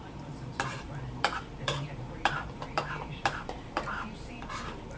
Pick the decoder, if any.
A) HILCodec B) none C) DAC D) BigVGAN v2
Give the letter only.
D